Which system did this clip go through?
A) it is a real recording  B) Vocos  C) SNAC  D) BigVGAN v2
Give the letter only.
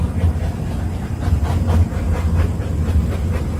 A